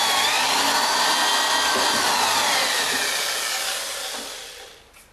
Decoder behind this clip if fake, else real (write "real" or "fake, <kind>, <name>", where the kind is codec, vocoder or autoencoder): real